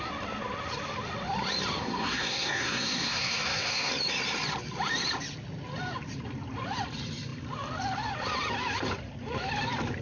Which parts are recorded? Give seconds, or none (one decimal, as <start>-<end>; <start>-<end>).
0.0-1.8; 3.9-10.0